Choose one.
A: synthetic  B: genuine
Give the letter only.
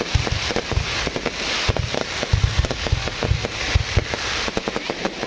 B